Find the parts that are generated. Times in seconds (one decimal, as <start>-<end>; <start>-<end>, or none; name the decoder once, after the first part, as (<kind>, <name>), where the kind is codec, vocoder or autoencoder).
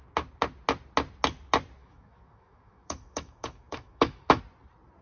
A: 1.8-4.4 (autoencoder, DAC-VAE)